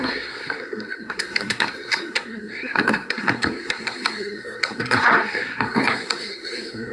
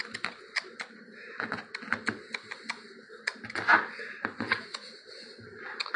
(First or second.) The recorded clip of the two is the second